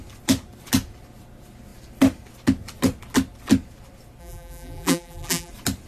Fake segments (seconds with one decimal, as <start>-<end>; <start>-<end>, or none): 4.2-5.5